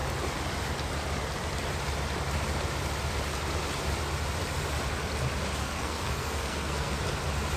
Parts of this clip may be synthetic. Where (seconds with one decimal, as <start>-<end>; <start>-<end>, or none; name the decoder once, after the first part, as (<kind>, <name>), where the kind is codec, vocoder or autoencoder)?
5.6-7.0 (codec, SNAC)